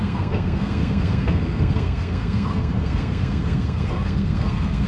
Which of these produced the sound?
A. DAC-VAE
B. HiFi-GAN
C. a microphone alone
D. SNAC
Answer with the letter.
D